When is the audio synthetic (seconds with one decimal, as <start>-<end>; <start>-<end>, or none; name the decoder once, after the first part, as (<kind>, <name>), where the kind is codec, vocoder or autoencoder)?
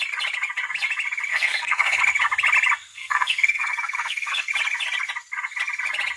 1.3-2.0 (codec, SNAC); 2.9-4.5